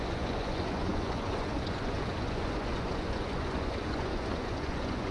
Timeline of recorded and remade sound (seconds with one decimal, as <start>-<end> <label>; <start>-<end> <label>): 0.0-5.1 remade